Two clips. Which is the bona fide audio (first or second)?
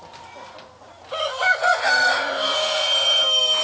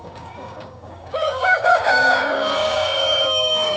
first